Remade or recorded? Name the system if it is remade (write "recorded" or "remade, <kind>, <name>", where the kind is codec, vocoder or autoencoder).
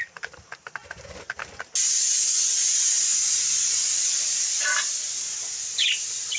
recorded